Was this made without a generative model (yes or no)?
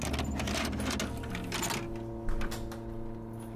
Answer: yes